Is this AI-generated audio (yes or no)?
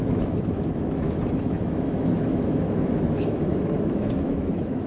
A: yes